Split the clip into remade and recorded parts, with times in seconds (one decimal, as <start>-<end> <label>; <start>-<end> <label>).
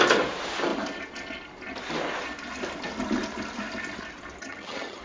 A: 0.0-4.4 recorded; 4.4-5.0 remade